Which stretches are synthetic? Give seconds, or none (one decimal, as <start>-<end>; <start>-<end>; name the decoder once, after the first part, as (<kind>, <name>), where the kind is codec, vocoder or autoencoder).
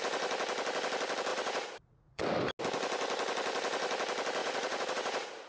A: 1.3-2.2 (vocoder, Vocos); 4.4-5.5